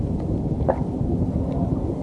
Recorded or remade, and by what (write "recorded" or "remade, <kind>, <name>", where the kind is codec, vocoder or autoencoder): recorded